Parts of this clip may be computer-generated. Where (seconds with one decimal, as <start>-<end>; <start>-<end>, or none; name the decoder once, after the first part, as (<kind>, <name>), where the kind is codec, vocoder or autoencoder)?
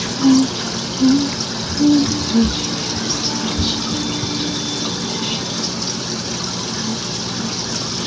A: none